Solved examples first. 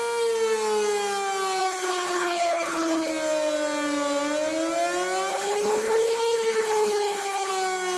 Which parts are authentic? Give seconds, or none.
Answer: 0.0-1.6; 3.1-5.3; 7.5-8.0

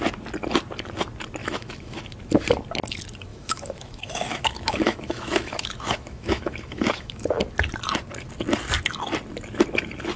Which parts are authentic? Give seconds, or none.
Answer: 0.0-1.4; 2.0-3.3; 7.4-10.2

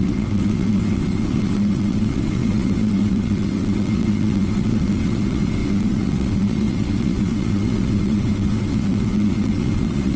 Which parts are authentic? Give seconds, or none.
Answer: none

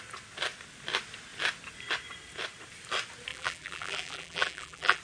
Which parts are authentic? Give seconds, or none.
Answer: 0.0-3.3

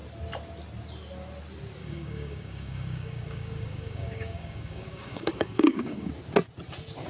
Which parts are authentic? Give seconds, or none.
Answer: 0.0-1.8; 6.1-7.1

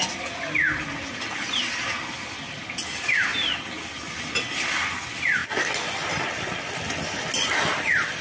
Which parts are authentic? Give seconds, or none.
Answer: 0.0-8.2

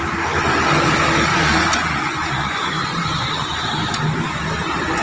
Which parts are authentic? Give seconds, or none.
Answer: 0.0-1.3; 3.3-5.0

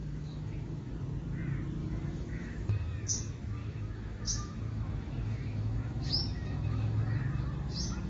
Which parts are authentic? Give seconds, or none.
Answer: 0.9-1.8; 2.7-3.6; 7.0-8.1